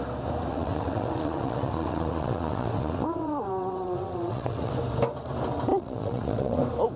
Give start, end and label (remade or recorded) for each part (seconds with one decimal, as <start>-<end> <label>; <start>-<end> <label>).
0.0-0.5 recorded; 0.5-4.7 remade; 4.7-5.7 recorded; 5.7-6.6 remade; 6.6-7.0 recorded